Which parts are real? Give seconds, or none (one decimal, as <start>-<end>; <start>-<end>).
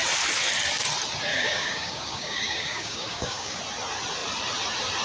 0.0-1.3; 3.6-5.0